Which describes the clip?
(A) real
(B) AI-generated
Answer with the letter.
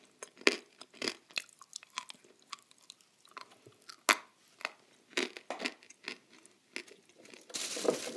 A